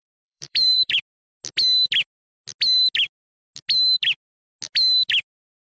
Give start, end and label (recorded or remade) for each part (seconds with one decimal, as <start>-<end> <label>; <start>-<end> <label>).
0.0-1.0 remade; 1.0-5.7 recorded